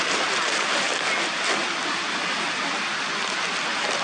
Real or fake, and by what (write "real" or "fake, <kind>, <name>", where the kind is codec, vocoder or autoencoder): real